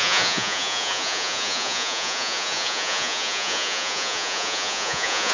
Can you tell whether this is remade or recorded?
remade